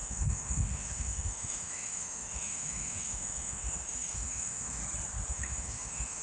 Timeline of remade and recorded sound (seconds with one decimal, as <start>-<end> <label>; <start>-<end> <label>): 0.0-4.8 remade; 4.8-5.3 recorded; 5.3-6.2 remade